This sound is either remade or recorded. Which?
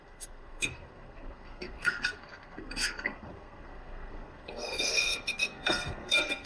remade